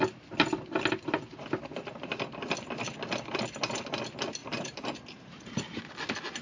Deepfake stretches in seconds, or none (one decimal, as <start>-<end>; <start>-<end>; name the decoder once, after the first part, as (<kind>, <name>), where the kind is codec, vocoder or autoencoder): 4.4-5.8 (vocoder, BigVGAN v2)

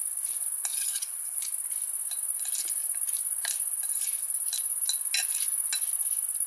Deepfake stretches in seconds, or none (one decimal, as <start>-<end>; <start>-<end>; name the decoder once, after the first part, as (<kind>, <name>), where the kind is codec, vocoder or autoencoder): 0.7-1.4 (vocoder, Vocos)

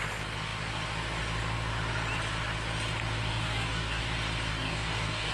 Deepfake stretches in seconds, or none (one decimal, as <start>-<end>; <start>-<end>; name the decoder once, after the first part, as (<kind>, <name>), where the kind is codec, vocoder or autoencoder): 3.3-4.0 (codec, DAC); 4.5-5.3

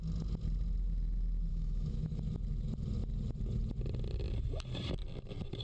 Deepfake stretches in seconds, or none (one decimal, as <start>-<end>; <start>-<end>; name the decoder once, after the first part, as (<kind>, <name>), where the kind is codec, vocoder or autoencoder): 1.5-2.2 (autoencoder, DAC-VAE)

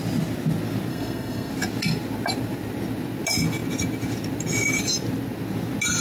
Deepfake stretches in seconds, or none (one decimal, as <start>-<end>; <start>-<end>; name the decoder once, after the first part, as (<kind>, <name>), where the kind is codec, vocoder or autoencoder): 0.9-1.5 (codec, SNAC)